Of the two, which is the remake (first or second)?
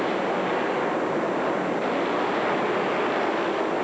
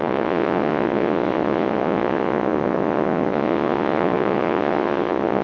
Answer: second